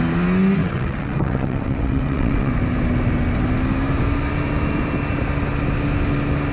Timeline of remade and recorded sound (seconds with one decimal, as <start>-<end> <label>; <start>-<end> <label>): 0.0-0.6 recorded; 0.6-2.5 remade; 2.5-6.5 recorded